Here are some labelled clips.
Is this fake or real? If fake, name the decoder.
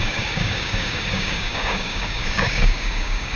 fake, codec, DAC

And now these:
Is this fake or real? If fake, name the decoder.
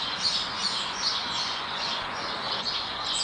fake, vocoder, Vocos